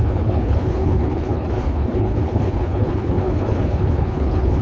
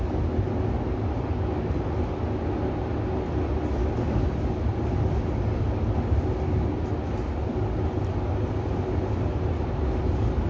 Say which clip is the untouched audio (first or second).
second